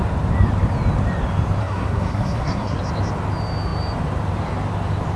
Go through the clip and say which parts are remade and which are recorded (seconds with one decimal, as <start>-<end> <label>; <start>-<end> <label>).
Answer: 0.0-1.6 recorded; 1.6-2.8 remade; 2.8-5.2 recorded